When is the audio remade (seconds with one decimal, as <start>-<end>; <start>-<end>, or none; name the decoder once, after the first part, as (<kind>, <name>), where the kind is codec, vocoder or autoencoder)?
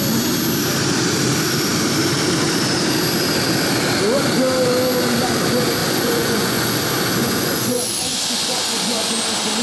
5.8-6.8 (vocoder, Vocos); 7.2-9.1